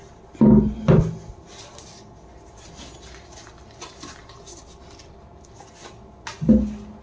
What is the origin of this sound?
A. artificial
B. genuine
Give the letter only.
B